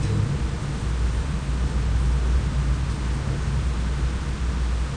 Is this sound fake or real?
real